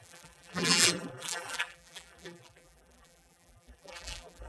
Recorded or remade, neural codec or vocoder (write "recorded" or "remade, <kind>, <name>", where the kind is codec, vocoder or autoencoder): remade, vocoder, BigVGAN v2